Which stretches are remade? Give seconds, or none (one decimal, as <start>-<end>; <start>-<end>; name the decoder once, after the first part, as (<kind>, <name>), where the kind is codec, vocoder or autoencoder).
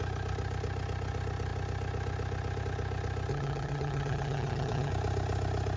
3.3-4.9 (vocoder, HiFi-GAN)